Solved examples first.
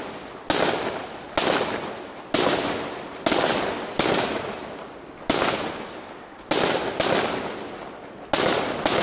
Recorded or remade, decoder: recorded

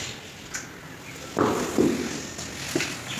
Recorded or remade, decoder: recorded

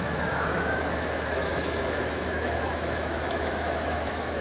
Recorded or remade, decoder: remade, autoencoder, DAC-VAE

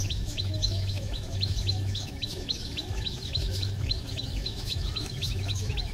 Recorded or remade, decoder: remade, autoencoder, DAC-VAE